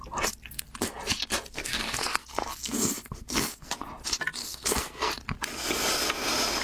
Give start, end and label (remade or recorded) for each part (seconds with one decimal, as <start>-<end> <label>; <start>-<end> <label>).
0.0-1.5 recorded; 1.5-3.7 remade; 3.7-4.4 recorded; 4.4-5.1 remade; 5.1-6.6 recorded

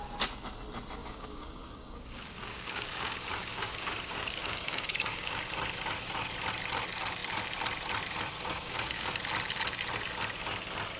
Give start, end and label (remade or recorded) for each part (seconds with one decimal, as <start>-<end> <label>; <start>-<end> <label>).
0.0-1.0 recorded; 1.0-5.4 remade; 5.4-8.5 recorded; 8.5-9.2 remade; 9.2-11.0 recorded

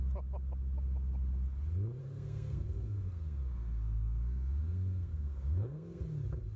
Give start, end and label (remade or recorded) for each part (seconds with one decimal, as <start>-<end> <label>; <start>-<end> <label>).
0.0-2.0 recorded; 2.0-6.0 remade; 6.0-6.6 recorded

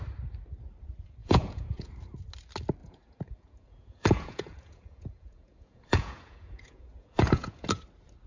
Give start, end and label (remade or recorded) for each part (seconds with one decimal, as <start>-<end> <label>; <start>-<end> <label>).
0.0-1.2 recorded; 1.2-1.9 remade; 1.9-2.8 recorded; 2.8-7.8 remade; 7.8-8.3 recorded

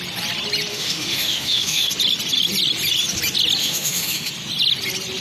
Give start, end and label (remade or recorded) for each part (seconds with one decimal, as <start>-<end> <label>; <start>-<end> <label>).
0.0-0.7 recorded; 0.7-1.9 remade; 1.9-3.6 recorded; 3.6-4.3 remade; 4.3-5.2 recorded

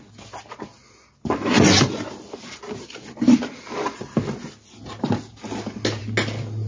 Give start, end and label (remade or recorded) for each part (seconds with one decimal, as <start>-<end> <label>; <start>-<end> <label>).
0.0-6.7 recorded